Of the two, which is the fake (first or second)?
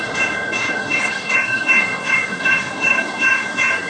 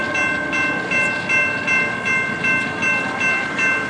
first